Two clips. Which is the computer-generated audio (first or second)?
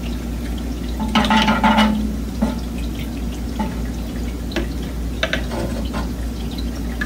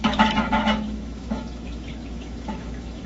second